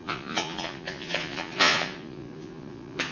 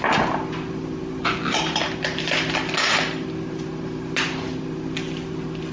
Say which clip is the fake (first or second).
first